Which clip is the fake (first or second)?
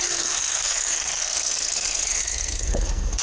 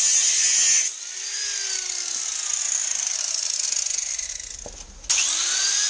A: first